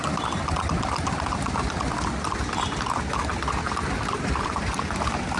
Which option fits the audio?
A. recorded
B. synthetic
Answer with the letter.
A